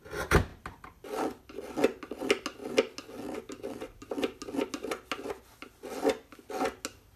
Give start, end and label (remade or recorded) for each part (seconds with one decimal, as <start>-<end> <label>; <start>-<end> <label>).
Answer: 0.0-7.2 recorded